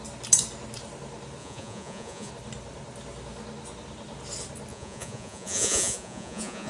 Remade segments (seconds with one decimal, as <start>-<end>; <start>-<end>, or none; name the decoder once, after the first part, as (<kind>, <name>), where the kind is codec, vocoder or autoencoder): 1.4-2.3 (vocoder, Vocos); 4.7-6.7